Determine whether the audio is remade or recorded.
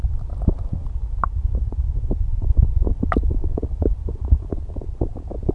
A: recorded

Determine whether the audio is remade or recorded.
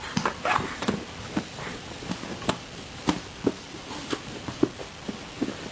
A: recorded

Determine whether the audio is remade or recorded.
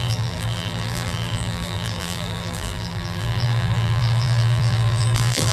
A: remade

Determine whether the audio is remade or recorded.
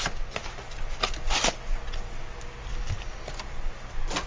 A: recorded